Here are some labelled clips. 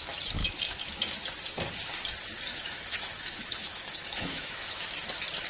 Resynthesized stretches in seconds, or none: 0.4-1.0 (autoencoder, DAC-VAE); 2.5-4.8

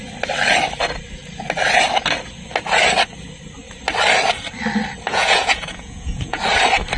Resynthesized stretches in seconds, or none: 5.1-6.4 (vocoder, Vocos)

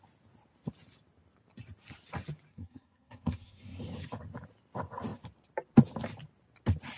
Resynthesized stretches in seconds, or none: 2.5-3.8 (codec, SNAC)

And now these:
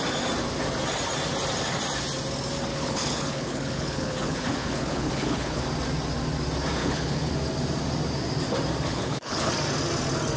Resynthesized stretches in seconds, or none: 2.7-5.6 (codec, HILCodec); 6.8-7.3; 8.9-9.5

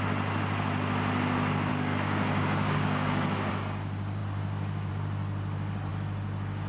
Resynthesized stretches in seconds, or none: 1.7-3.5 (codec, DAC)

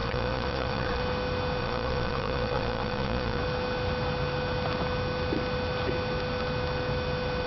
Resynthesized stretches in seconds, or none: 0.0-1.0 (vocoder, Vocos); 1.6-3.4

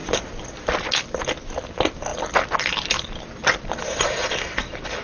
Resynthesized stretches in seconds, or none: none

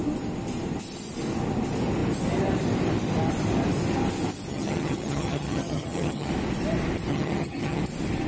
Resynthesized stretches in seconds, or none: 4.5-6.3 (vocoder, HiFi-GAN); 7.1-7.8